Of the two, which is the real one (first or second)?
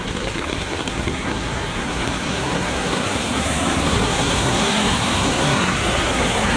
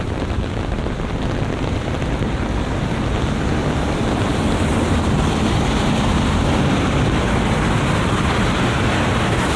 second